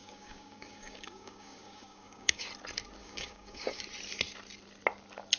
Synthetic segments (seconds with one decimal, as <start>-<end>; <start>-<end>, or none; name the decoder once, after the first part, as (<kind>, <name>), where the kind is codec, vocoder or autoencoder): 0.0-2.5 (codec, DAC); 3.0-3.8